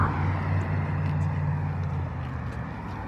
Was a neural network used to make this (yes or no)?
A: no